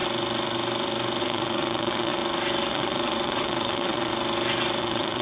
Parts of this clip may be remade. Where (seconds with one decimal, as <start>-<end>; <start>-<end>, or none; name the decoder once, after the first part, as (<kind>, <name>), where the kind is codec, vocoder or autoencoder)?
1.2-2.2 (vocoder, WaveNeXt); 2.7-4.1; 4.8-5.2